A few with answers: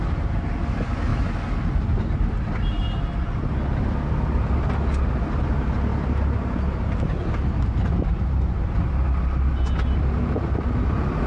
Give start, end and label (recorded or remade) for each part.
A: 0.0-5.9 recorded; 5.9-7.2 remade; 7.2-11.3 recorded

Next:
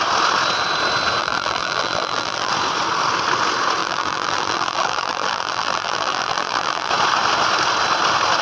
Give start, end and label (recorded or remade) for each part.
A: 0.0-1.2 recorded; 1.2-2.5 remade; 2.5-3.8 recorded; 3.8-6.9 remade; 6.9-8.4 recorded

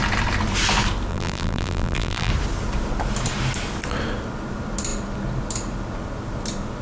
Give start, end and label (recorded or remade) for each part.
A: 0.0-1.1 recorded; 1.1-2.3 remade; 2.3-6.8 recorded

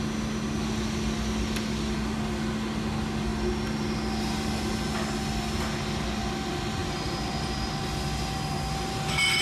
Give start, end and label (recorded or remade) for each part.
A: 0.0-6.8 recorded; 6.8-7.8 remade; 7.8-9.4 recorded

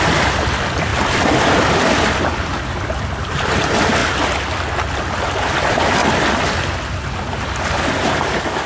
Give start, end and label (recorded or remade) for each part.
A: 0.0-4.0 remade; 4.0-5.0 recorded; 5.0-6.0 remade; 6.0-7.7 recorded; 7.7-8.7 remade